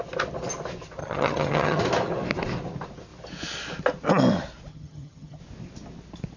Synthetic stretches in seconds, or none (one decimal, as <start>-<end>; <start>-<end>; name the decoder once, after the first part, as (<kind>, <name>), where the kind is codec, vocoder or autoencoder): 1.0-1.8 (vocoder, HiFi-GAN); 4.7-5.4